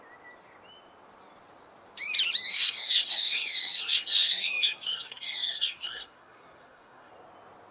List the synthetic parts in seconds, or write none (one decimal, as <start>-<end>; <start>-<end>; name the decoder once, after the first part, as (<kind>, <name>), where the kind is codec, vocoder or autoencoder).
2.5-7.1 (codec, SNAC)

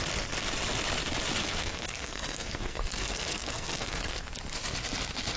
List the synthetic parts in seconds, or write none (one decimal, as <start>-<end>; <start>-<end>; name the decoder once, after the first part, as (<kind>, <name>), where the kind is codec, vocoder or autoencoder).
1.4-4.3 (codec, SNAC)

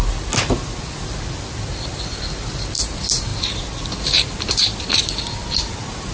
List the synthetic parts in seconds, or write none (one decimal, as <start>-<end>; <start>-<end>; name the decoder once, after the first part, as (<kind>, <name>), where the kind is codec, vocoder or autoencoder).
none

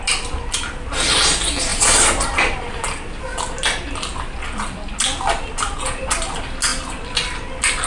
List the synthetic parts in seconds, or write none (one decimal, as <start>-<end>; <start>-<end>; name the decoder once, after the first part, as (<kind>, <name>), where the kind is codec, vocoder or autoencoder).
none

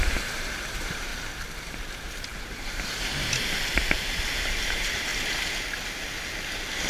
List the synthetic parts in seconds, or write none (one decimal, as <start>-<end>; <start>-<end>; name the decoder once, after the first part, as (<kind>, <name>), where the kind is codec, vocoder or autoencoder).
0.0-1.1 (vocoder, BigVGAN v2); 1.6-5.1

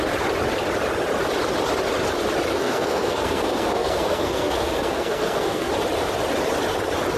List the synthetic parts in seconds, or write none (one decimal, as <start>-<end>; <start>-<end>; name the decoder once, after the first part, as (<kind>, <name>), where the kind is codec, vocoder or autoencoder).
2.5-5.7 (codec, SNAC)

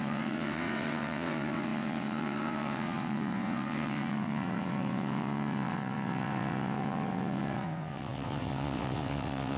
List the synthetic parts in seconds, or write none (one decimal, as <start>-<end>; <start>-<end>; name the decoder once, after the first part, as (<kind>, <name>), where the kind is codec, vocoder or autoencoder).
0.0-9.6 (vocoder, WaveNeXt)

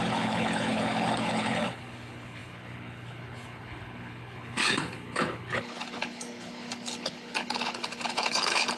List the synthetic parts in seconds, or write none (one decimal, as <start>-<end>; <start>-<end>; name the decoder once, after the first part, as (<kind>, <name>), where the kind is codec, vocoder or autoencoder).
0.0-8.8 (codec, HILCodec)